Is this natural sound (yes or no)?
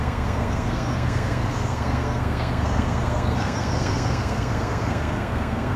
no